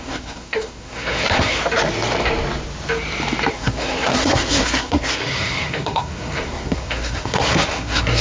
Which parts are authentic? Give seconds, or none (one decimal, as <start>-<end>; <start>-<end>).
1.6-3.5